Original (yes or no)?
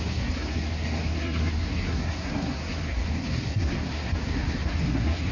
no